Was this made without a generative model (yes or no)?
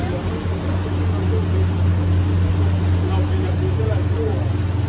yes